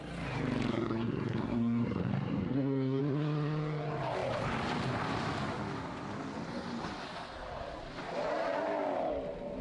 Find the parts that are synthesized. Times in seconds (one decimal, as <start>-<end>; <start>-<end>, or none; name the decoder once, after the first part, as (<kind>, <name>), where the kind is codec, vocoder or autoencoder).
0.7-3.0 (codec, SNAC)